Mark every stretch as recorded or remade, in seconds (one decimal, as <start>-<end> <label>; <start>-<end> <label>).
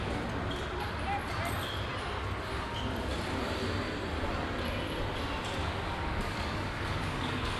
0.0-5.6 recorded; 5.6-7.6 remade